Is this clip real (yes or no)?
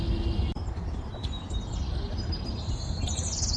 yes